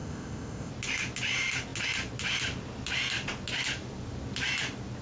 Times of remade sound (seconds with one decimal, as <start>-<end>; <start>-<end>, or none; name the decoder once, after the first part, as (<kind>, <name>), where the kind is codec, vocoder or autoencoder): 0.0-0.7 (codec, ZipCodec)